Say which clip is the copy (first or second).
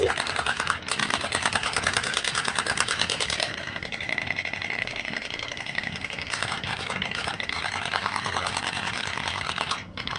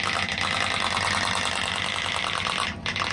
first